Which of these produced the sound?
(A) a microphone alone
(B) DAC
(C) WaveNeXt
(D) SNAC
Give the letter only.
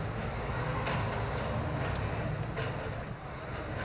A